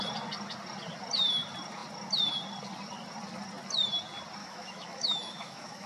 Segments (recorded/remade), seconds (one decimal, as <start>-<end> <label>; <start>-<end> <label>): 0.0-4.4 recorded; 4.4-5.9 remade